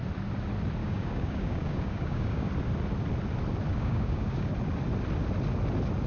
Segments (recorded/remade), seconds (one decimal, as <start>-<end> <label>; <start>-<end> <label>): 0.0-0.8 recorded; 0.8-2.5 remade; 2.5-3.7 recorded; 3.7-4.5 remade; 4.5-6.1 recorded